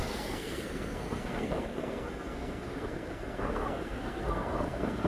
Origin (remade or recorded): remade